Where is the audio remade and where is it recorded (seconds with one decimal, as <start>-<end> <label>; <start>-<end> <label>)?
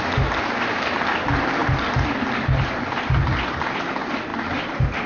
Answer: 0.0-5.1 recorded